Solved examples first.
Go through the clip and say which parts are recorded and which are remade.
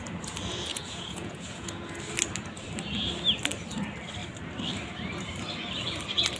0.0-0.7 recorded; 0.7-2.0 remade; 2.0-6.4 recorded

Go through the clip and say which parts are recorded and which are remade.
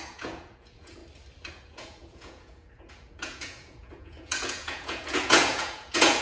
0.0-1.0 remade; 1.0-1.5 recorded; 1.5-6.2 remade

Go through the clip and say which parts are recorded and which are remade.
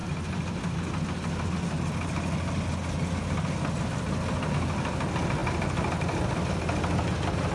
0.0-7.5 recorded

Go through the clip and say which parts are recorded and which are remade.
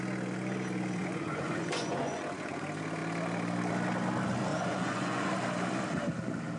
0.0-1.0 recorded; 1.0-2.6 remade; 2.6-4.5 recorded; 4.5-5.3 remade; 5.3-6.6 recorded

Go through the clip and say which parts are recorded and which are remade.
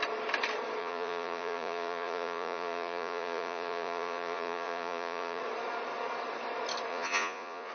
0.0-0.8 recorded; 0.8-5.4 remade; 5.4-6.9 recorded; 6.9-7.7 remade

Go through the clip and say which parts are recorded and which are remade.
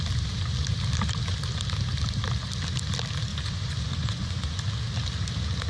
0.0-3.3 recorded; 3.3-4.6 remade; 4.6-5.7 recorded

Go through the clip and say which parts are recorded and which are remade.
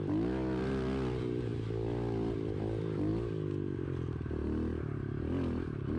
0.0-6.0 recorded